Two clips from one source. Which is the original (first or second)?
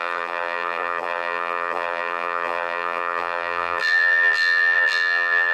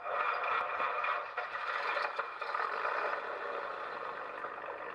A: second